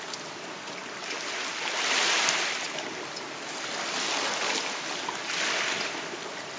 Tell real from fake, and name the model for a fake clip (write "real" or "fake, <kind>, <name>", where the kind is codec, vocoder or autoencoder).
real